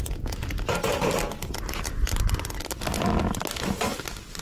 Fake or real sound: real